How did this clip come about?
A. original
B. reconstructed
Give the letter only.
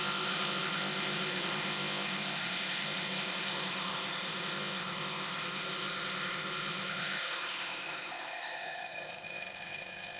B